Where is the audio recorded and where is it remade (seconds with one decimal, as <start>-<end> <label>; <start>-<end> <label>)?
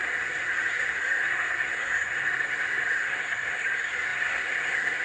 0.0-5.0 remade